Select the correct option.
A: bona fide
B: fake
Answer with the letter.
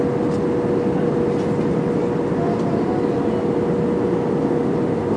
A